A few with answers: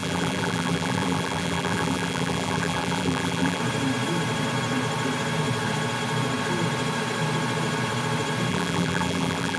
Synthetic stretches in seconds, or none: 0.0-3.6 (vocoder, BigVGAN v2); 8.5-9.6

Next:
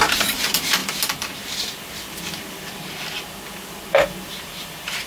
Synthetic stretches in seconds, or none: 0.0-0.8 (vocoder, BigVGAN v2); 3.9-5.1